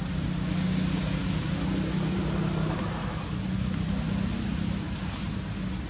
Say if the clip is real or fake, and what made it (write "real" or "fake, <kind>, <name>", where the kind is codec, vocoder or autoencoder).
real